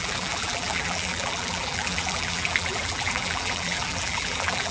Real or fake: fake